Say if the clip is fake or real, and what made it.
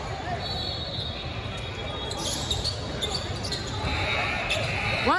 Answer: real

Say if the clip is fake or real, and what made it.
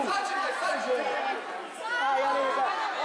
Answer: real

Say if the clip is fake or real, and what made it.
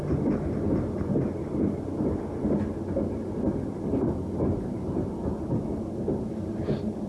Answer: real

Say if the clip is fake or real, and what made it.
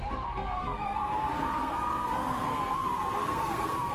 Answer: fake, codec, SNAC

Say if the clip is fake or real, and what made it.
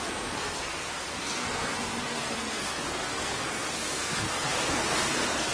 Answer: fake, codec, SNAC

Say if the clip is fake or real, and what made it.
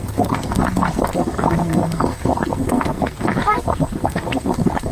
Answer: fake, codec, SNAC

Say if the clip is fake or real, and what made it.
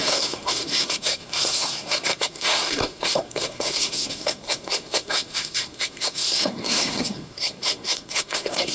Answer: fake, codec, SNAC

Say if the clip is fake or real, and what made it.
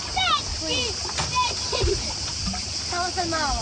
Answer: real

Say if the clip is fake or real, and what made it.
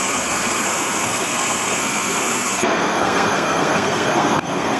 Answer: fake, codec, SNAC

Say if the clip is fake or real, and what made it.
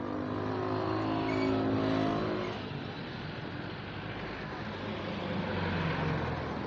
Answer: real